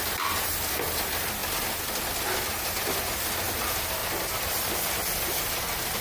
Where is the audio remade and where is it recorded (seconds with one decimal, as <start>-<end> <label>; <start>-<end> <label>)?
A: 0.0-6.0 recorded